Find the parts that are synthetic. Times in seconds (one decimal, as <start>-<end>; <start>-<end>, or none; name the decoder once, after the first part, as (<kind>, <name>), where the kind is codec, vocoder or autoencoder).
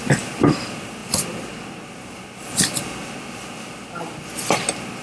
none